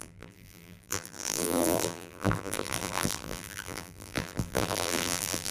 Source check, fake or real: fake